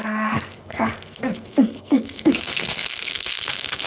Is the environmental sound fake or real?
fake